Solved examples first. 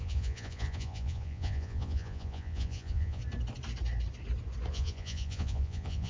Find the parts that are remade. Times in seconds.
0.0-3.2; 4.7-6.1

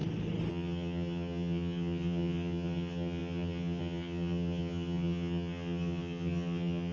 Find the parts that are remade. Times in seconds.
0.5-6.9